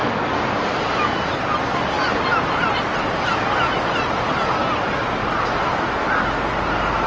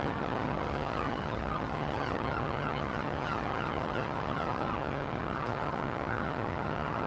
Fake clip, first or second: second